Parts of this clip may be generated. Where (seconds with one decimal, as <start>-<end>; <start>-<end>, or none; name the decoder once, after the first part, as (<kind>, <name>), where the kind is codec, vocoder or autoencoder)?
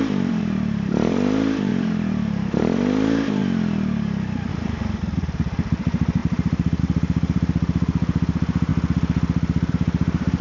0.0-3.4 (vocoder, BigVGAN v2); 4.5-8.7; 9.7-10.4